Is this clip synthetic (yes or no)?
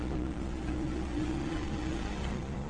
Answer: yes